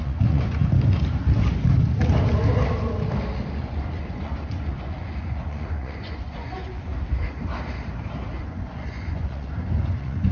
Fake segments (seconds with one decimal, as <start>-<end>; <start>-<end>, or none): 0.0-0.6; 3.5-6.9; 8.4-10.3